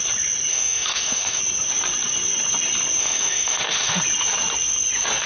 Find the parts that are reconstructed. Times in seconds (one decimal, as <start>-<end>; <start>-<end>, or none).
0.5-1.4; 3.0-4.0

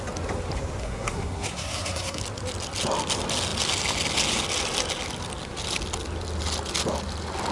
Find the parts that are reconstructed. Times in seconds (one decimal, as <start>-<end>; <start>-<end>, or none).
0.8-2.2